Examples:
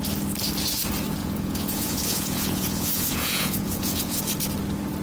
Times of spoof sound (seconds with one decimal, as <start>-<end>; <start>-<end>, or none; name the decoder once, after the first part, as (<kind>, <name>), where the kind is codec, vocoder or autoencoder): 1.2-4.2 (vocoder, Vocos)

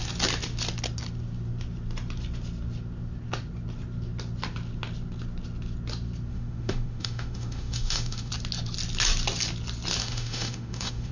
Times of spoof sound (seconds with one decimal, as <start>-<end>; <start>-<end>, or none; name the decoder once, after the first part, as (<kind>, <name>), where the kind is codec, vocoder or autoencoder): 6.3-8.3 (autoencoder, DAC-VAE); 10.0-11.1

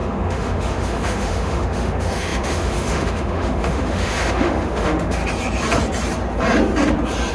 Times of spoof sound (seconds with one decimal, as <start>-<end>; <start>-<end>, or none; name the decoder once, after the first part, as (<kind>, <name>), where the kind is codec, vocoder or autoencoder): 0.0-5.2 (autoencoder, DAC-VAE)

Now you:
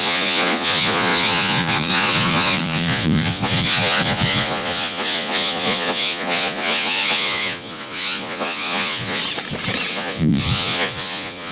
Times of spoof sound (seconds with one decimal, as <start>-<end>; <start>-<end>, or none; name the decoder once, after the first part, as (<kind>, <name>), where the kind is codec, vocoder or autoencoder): 0.0-9.2 (vocoder, Vocos); 9.9-11.5

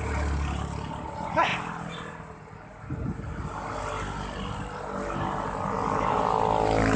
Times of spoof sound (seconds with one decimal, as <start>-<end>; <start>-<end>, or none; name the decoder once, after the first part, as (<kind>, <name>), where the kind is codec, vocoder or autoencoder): none